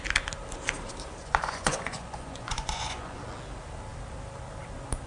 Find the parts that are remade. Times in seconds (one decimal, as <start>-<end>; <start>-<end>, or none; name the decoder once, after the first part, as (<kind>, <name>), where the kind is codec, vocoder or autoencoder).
1.2-3.2 (vocoder, Vocos)